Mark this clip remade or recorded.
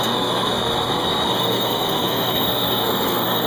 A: remade